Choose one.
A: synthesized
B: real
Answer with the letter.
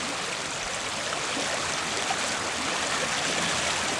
B